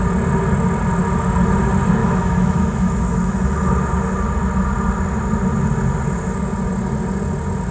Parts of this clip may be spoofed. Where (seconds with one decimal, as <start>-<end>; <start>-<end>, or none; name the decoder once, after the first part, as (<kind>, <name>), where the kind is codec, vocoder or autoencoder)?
2.0-3.7 (autoencoder, DAC-VAE)